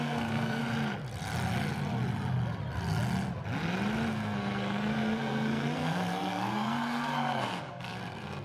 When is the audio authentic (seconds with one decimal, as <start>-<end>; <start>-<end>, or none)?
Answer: 0.6-4.1